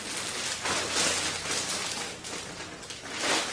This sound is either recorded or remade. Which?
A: recorded